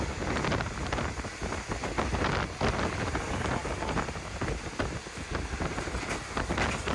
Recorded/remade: recorded